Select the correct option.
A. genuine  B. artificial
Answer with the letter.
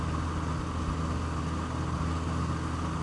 A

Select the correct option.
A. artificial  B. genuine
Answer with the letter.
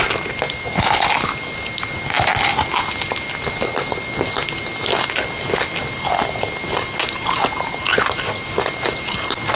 B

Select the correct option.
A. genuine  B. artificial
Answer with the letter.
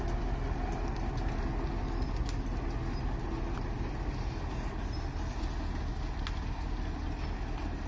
A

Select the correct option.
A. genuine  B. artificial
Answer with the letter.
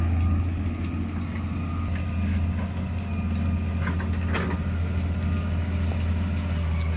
A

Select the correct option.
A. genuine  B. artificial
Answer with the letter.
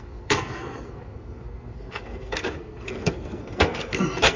B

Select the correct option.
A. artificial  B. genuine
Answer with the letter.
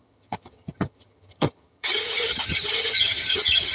A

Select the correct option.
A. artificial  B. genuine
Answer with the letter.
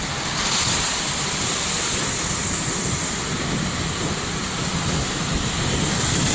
B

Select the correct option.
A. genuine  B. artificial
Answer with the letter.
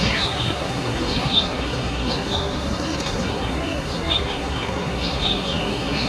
B